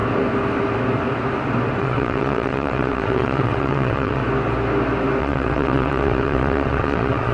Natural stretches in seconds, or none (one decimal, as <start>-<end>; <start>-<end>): 0.0-1.8; 4.2-5.2